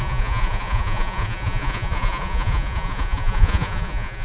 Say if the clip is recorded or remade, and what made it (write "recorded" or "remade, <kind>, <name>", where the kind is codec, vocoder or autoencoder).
remade, vocoder, Vocos